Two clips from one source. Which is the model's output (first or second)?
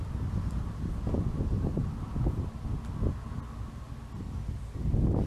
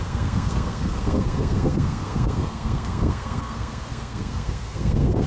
second